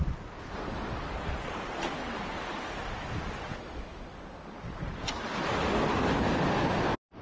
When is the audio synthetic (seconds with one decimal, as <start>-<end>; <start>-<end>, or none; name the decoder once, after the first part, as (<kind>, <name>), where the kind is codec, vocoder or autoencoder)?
3.5-4.0 (autoencoder, DAC-VAE)